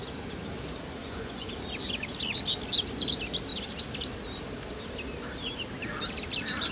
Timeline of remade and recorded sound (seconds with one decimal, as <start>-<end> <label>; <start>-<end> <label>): 0.0-1.0 recorded; 1.0-1.5 remade; 1.5-6.7 recorded